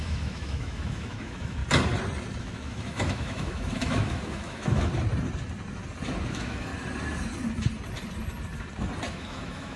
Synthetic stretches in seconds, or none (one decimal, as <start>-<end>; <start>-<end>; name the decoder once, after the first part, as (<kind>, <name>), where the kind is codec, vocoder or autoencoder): 0.0-1.6 (autoencoder, DAC-VAE); 2.4-4.9; 6.3-6.7; 9.1-9.8

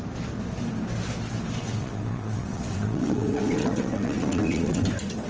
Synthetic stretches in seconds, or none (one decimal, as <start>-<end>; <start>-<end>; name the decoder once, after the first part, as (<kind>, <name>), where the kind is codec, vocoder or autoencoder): 1.6-4.8 (vocoder, WaveNeXt)

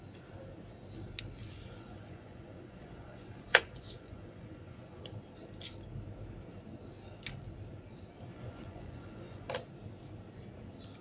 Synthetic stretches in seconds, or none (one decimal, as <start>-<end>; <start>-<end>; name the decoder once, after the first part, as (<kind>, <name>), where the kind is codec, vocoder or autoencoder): 1.4-5.0 (vocoder, Vocos); 8.3-9.5

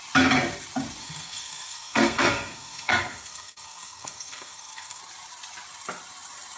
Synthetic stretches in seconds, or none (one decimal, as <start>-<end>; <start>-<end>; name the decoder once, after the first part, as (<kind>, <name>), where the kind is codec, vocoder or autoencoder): 1.0-5.0 (codec, SNAC)